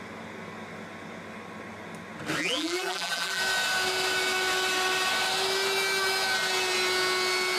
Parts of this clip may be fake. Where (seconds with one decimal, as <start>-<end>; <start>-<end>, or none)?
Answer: 2.4-3.4